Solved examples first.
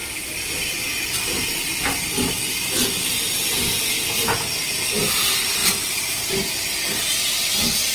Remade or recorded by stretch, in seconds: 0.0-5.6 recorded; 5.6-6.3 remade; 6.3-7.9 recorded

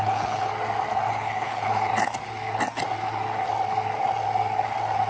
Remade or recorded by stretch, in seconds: 0.0-0.5 remade; 0.5-1.1 recorded; 1.1-1.9 remade; 1.9-5.1 recorded

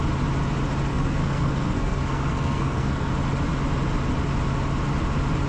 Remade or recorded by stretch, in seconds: 0.0-0.9 recorded; 0.9-3.1 remade; 3.1-5.5 recorded

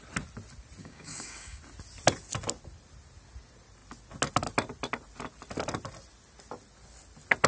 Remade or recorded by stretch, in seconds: 0.0-0.8 recorded; 0.8-1.6 remade; 1.6-7.5 recorded

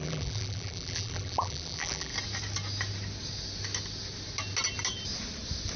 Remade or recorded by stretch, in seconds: 0.0-2.1 remade; 2.1-5.8 recorded

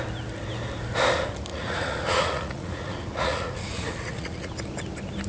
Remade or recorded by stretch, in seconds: 0.0-1.5 recorded; 1.5-4.5 remade; 4.5-5.3 recorded

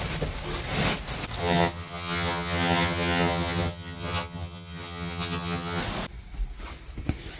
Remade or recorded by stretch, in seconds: 0.0-1.4 recorded; 1.4-5.8 remade; 5.8-7.4 recorded

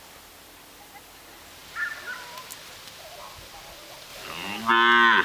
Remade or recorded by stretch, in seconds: 0.0-5.2 recorded